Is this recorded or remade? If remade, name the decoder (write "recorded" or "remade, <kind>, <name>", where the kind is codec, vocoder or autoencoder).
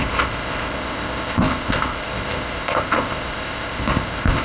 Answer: remade, codec, ZipCodec